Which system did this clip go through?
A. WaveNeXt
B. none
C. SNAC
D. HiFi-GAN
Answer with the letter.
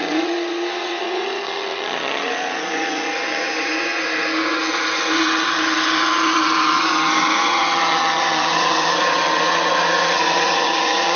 D